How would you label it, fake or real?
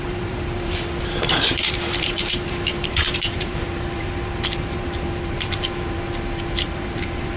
fake